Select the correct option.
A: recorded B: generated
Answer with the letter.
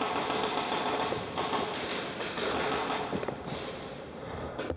A